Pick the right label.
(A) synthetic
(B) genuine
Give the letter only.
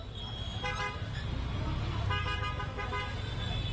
B